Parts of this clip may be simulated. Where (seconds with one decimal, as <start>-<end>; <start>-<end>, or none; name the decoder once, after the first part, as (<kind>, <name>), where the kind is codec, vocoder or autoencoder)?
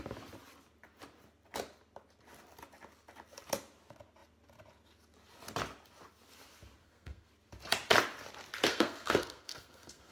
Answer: 6.8-7.3 (codec, SNAC); 8.7-10.1